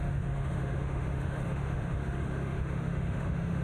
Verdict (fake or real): fake